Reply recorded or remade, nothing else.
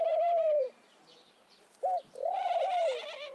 remade